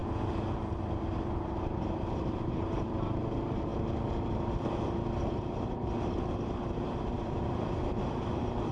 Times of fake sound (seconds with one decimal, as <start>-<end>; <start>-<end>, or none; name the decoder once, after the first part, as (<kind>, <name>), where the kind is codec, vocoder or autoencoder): 1.3-3.7 (vocoder, BigVGAN v2); 5.2-8.7